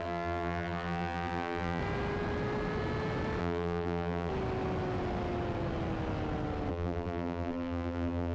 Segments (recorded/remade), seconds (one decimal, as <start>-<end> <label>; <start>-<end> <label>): 0.0-1.8 remade; 1.8-3.4 recorded; 3.4-4.3 remade; 4.3-6.7 recorded; 6.7-8.3 remade